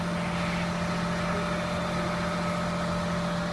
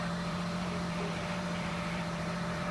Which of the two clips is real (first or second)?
first